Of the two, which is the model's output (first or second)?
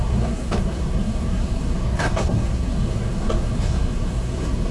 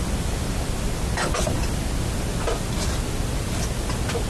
first